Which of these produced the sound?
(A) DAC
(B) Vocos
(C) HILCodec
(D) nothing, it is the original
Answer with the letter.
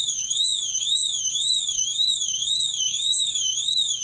A